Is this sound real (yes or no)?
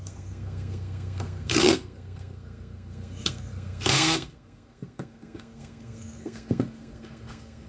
no